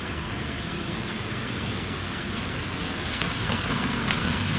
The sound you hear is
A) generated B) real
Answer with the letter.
A